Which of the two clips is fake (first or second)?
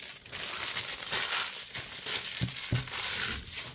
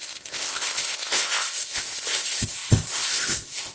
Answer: second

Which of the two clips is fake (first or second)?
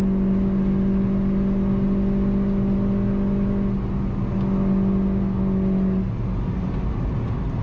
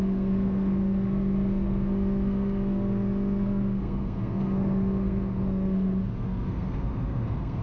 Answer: second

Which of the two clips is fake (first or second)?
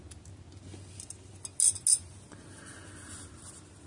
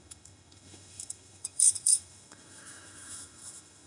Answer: second